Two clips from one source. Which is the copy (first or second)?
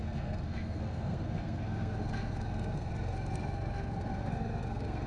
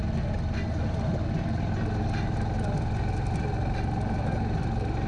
first